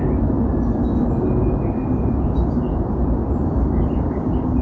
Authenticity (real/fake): real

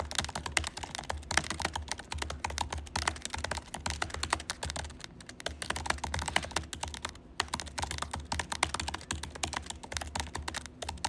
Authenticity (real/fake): real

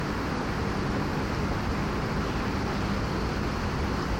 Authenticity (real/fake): real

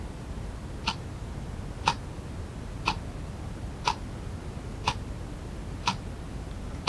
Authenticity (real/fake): real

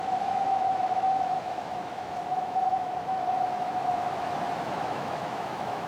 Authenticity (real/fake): fake